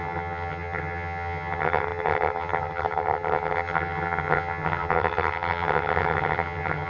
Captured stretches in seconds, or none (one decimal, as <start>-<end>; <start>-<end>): none